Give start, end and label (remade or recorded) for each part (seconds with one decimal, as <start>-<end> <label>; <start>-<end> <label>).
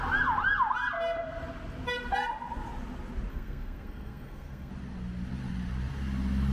0.0-3.3 recorded; 3.3-4.7 remade; 4.7-6.5 recorded